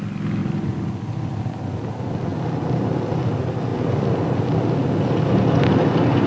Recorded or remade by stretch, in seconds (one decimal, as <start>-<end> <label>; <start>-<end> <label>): 0.0-0.4 recorded; 0.4-0.9 remade; 0.9-3.7 recorded; 3.7-4.4 remade; 4.4-6.3 recorded